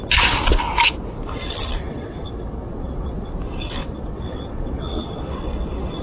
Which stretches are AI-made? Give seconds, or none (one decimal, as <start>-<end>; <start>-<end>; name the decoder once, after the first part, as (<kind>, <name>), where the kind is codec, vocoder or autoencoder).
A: 1.8-3.3 (vocoder, WaveNeXt); 3.8-5.4